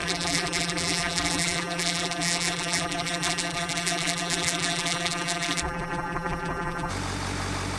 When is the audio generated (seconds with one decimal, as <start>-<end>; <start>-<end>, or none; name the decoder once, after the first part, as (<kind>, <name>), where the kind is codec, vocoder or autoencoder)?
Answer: 0.0-6.9 (vocoder, BigVGAN v2)